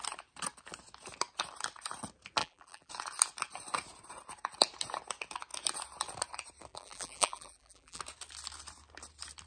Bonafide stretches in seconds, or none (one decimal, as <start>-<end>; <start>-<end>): 0.0-2.4; 2.9-6.7; 8.0-9.5